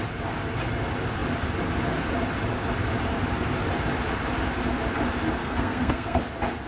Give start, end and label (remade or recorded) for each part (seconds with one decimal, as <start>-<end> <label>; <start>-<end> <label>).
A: 0.0-5.4 recorded; 5.4-6.2 remade; 6.2-6.7 recorded